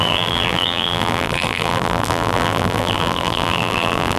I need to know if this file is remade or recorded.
remade